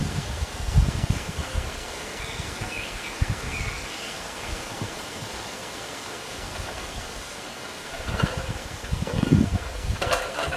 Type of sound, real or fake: fake